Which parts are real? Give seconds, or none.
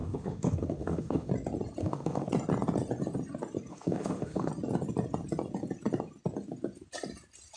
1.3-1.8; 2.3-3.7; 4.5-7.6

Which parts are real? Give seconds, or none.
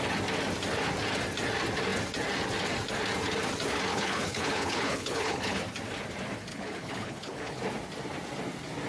0.0-3.9; 5.6-6.5; 7.6-8.9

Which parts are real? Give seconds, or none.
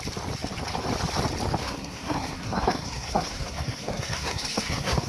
0.0-1.6